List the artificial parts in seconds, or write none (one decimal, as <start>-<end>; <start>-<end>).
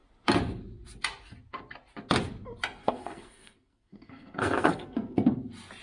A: 2.8-5.3